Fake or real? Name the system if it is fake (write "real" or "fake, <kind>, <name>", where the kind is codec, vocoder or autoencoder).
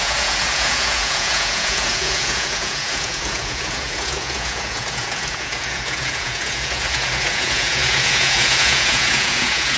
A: fake, vocoder, Vocos